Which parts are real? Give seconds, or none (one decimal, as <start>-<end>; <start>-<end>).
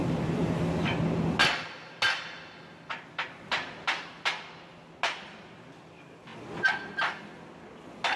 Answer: 0.8-8.2